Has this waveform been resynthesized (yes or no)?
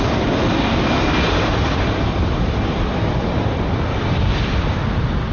no